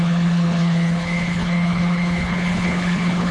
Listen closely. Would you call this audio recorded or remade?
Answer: remade